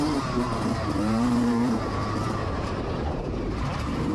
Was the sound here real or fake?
fake